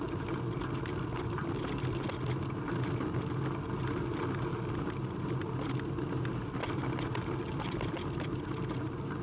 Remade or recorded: recorded